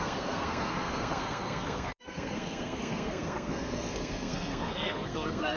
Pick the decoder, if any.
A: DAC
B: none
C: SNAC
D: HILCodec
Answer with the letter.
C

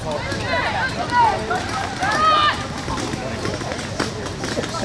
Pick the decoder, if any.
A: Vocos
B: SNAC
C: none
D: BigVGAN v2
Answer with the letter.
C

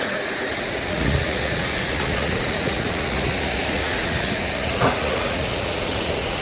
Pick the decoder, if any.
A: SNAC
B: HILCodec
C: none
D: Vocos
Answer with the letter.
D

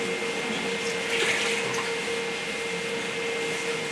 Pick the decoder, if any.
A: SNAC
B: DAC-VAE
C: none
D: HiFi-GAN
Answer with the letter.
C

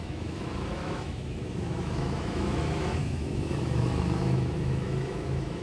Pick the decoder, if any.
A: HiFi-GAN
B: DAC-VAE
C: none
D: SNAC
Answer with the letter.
B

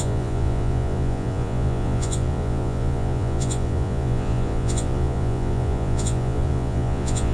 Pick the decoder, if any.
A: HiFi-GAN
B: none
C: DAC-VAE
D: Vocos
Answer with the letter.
D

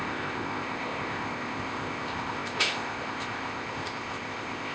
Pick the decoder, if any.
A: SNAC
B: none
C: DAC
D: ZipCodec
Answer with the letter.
D